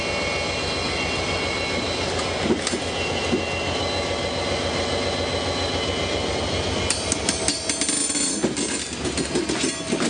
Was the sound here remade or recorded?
recorded